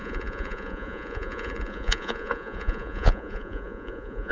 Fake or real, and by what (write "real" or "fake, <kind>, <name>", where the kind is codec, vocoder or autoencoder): fake, vocoder, Vocos